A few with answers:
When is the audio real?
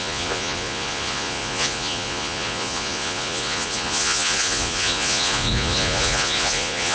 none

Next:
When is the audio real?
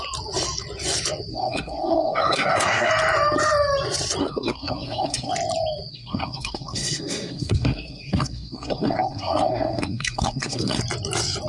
0.0-1.3; 2.9-4.2; 5.3-5.9; 10.8-11.5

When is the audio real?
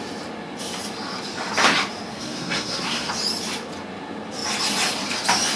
0.0-2.1; 3.1-5.6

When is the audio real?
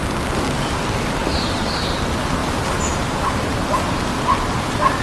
0.0-1.2; 1.7-2.4; 3.5-5.0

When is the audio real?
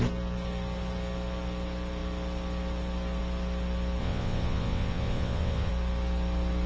0.0-4.0; 5.7-6.7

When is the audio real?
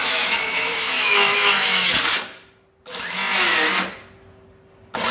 1.9-5.1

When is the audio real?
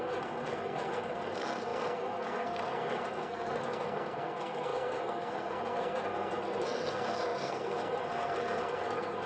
none